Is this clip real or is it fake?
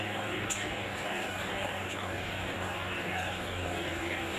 fake